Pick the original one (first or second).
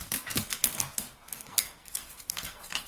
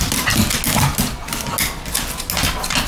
second